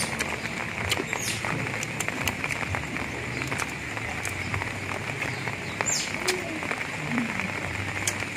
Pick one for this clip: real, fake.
fake